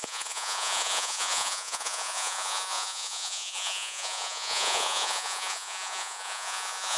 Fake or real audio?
fake